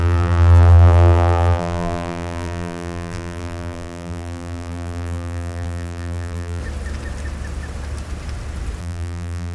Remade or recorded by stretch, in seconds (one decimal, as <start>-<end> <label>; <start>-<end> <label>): 0.0-6.6 remade; 6.6-8.8 recorded; 8.8-9.5 remade